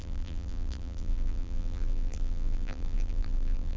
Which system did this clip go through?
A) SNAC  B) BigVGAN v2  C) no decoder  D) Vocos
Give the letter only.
B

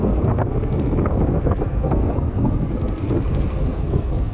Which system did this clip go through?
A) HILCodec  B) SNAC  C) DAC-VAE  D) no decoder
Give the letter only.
B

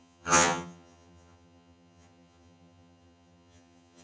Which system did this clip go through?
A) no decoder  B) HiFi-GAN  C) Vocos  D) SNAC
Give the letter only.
B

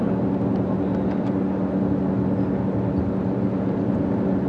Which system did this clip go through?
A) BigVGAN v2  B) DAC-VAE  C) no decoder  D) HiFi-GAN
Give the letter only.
C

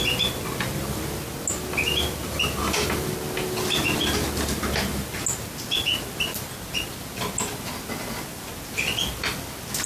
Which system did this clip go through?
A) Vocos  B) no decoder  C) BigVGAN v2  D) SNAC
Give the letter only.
B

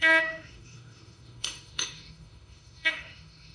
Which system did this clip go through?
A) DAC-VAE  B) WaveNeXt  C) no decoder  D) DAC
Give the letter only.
A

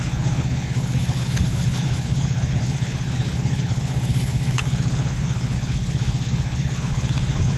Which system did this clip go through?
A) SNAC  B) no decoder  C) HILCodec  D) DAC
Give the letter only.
C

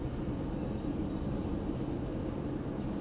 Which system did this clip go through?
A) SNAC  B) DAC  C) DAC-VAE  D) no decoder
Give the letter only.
D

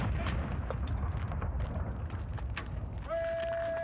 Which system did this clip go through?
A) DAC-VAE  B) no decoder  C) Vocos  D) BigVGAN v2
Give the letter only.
B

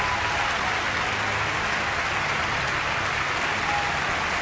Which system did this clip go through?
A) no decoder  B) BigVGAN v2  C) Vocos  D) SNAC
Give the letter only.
A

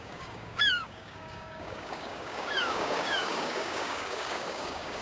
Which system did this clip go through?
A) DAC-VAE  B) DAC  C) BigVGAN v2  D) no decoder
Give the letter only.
B